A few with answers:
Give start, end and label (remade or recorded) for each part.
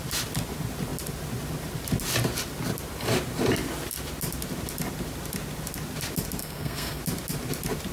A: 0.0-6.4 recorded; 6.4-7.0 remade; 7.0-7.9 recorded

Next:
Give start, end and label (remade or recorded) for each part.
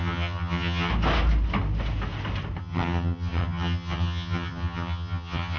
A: 0.0-0.9 remade; 0.9-2.6 recorded; 2.6-5.6 remade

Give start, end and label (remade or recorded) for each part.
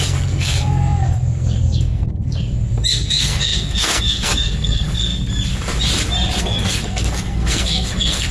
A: 0.0-5.1 remade; 5.1-6.4 recorded; 6.4-8.3 remade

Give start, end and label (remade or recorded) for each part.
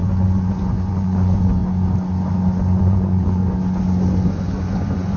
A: 0.0-1.6 remade; 1.6-2.8 recorded; 2.8-3.4 remade; 3.4-4.3 recorded; 4.3-5.2 remade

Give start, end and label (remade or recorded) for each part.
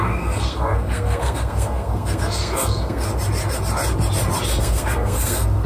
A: 0.0-3.1 remade; 3.1-4.6 recorded; 4.6-5.7 remade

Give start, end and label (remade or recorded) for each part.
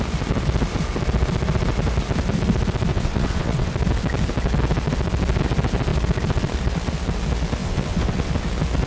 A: 0.0-2.9 recorded; 2.9-3.7 remade; 3.7-7.6 recorded; 7.6-8.3 remade; 8.3-8.9 recorded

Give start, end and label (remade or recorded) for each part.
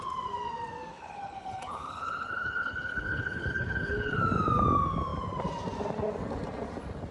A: 0.0-0.9 recorded; 0.9-4.2 remade; 4.2-7.1 recorded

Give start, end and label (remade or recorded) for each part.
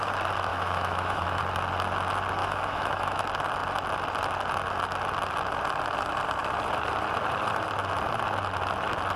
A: 0.0-0.5 recorded; 0.5-1.4 remade; 1.4-2.4 recorded; 2.4-3.2 remade; 3.2-9.2 recorded